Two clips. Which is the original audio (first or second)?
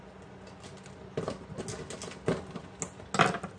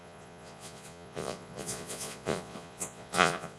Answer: first